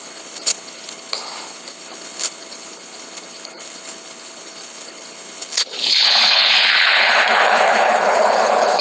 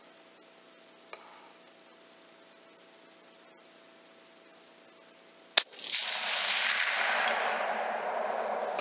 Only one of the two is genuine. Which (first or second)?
second